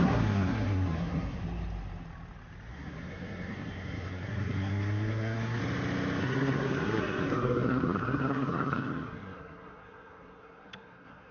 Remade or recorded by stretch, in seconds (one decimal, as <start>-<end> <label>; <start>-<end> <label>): 0.0-1.4 remade; 1.4-2.7 recorded; 2.7-5.6 remade; 5.6-6.2 recorded; 6.2-11.3 remade